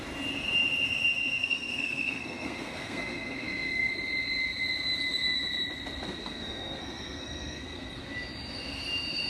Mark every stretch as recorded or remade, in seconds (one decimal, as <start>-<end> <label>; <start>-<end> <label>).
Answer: 0.0-1.4 recorded; 1.4-3.9 remade; 3.9-6.2 recorded; 6.2-8.0 remade; 8.0-9.3 recorded